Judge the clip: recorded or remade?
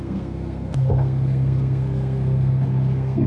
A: remade